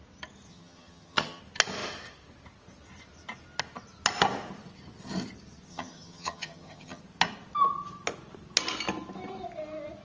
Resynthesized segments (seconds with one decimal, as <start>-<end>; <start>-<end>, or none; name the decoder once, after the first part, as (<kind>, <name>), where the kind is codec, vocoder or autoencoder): 0.5-1.4 (vocoder, HiFi-GAN); 5.7-7.0